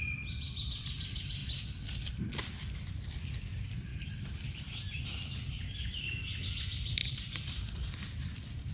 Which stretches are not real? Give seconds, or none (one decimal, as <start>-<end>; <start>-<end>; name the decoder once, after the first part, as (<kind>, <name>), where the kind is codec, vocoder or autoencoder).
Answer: 0.0-1.4 (vocoder, BigVGAN v2); 2.2-3.9; 4.4-8.7